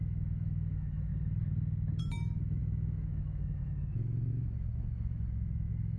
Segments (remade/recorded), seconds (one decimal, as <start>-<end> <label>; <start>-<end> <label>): 0.0-1.1 remade; 1.1-2.0 recorded; 2.0-6.0 remade